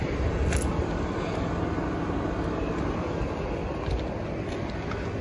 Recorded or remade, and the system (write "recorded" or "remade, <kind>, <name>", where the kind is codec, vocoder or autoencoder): recorded